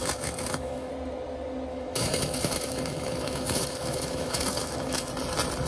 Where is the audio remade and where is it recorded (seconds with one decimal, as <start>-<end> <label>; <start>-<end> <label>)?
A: 0.0-0.9 remade; 0.9-1.7 recorded; 1.7-5.1 remade; 5.1-5.7 recorded

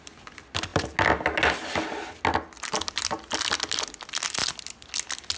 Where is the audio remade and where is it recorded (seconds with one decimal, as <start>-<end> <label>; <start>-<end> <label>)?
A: 0.0-5.4 recorded

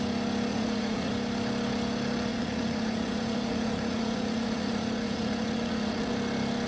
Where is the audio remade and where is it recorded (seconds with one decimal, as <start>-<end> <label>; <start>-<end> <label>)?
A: 0.0-0.5 recorded; 0.5-1.1 remade; 1.1-2.3 recorded; 2.3-6.1 remade; 6.1-6.7 recorded

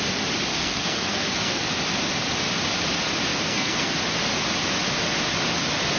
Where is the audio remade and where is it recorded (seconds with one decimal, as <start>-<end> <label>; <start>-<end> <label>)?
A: 0.0-0.5 recorded; 0.5-1.6 remade; 1.6-3.3 recorded; 3.3-3.9 remade; 3.9-6.0 recorded

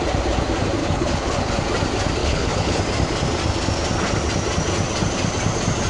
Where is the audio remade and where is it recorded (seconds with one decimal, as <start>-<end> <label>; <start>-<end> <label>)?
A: 0.0-0.8 recorded; 0.8-1.5 remade; 1.5-2.2 recorded; 2.2-2.8 remade; 2.8-5.9 recorded

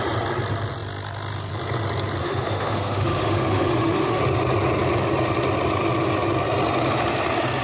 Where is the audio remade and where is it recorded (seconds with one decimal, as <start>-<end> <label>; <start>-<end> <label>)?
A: 0.0-2.2 recorded; 2.2-4.2 remade; 4.2-7.6 recorded

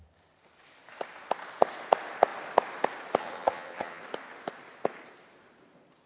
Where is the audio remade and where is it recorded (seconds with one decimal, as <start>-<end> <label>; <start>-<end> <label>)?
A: 0.0-3.2 recorded; 3.2-4.0 remade; 4.0-6.1 recorded